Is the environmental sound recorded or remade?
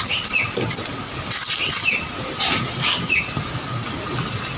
recorded